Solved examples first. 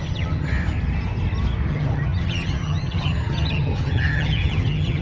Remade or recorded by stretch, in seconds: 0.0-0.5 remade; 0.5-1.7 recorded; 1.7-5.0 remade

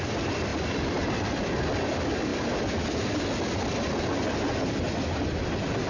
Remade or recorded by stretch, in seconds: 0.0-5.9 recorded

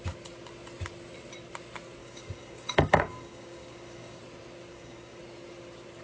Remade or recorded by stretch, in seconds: 0.0-2.0 recorded; 2.0-4.2 remade; 4.2-4.7 recorded; 4.7-5.2 remade; 5.2-6.0 recorded

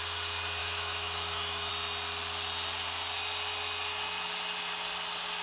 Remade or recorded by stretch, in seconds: 0.0-0.6 recorded; 0.6-1.7 remade; 1.7-5.4 recorded

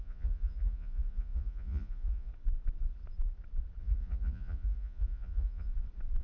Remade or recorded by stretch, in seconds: 0.0-2.3 remade; 2.3-3.8 recorded; 3.8-5.7 remade; 5.7-6.2 recorded

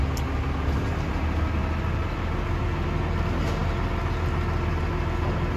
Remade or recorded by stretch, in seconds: 0.0-5.6 recorded

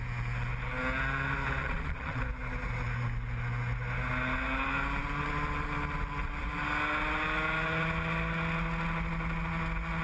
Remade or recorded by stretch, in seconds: 0.0-1.6 recorded; 1.6-2.2 remade; 2.2-10.0 recorded